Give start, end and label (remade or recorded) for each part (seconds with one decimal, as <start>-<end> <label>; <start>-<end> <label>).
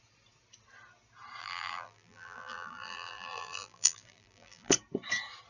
0.0-1.4 recorded; 1.4-4.7 remade; 4.7-5.5 recorded